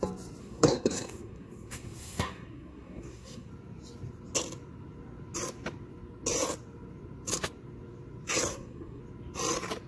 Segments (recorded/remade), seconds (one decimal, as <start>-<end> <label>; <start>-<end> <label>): 0.0-0.4 recorded; 0.4-3.5 remade; 3.5-8.5 recorded; 8.5-9.0 remade; 9.0-9.9 recorded